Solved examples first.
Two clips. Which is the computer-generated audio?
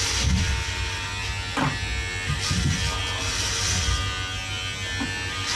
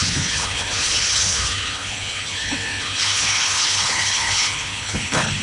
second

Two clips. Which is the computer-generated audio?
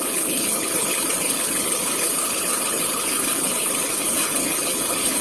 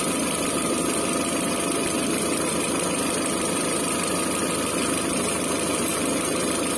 first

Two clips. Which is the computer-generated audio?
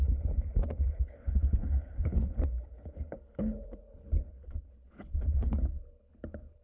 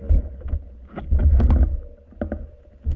first